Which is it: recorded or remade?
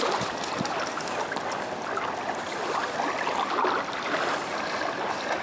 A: recorded